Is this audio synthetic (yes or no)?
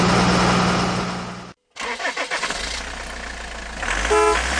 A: no